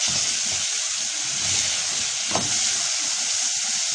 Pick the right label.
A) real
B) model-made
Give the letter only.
A